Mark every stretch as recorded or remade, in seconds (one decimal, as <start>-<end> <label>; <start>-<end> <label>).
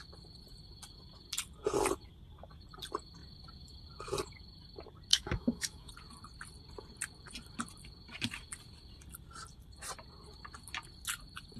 0.0-5.1 recorded; 5.1-5.9 remade; 5.9-11.6 recorded